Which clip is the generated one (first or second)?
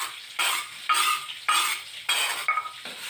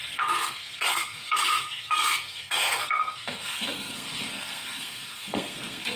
second